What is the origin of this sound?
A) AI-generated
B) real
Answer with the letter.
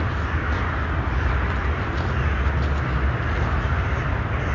B